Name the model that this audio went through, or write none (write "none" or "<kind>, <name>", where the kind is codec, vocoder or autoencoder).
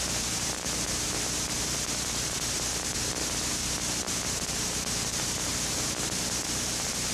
vocoder, BigVGAN v2